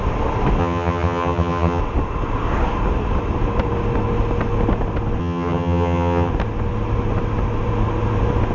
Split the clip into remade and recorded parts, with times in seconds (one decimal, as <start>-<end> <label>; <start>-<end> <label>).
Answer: 0.0-0.6 recorded; 0.6-1.8 remade; 1.8-5.2 recorded; 5.2-6.3 remade; 6.3-8.5 recorded